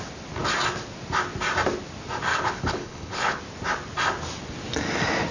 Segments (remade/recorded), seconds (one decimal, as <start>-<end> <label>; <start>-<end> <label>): 0.0-2.3 recorded; 2.3-3.4 remade; 3.4-5.3 recorded